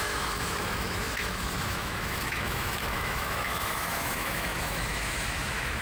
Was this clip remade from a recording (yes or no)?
yes